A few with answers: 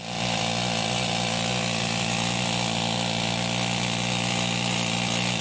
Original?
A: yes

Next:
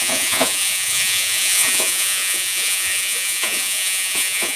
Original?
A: no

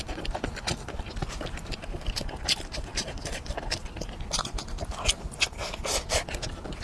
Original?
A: yes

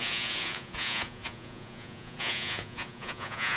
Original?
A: no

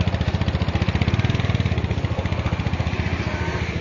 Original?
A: yes